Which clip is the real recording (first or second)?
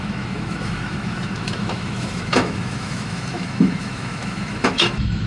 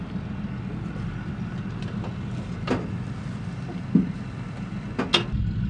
second